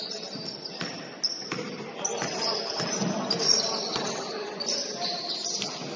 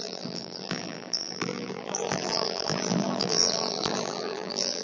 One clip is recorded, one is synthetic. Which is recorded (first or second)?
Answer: first